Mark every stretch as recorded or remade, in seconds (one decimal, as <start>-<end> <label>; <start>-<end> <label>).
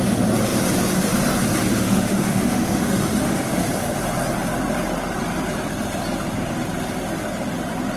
0.0-1.7 recorded; 1.7-3.7 remade; 3.7-8.0 recorded